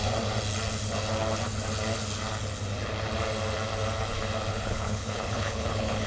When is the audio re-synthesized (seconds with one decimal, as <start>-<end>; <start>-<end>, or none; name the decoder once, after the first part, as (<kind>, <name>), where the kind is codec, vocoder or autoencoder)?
4.5-6.1 (codec, HILCodec)